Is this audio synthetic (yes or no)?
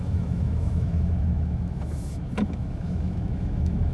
yes